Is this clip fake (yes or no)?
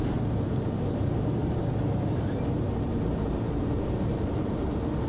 yes